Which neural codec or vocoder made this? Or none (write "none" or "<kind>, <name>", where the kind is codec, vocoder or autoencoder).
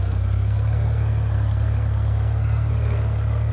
codec, SNAC